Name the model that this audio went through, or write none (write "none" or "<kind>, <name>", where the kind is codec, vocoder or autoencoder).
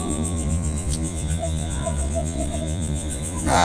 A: vocoder, Vocos